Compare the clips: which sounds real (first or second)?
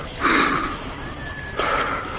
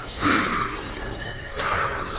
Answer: first